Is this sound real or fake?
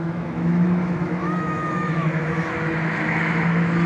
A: fake